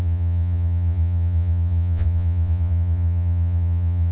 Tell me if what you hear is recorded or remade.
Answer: remade